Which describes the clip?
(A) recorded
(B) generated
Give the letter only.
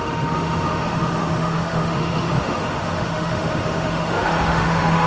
B